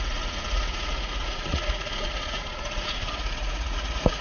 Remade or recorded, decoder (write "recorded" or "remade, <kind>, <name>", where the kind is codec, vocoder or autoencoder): remade, vocoder, Vocos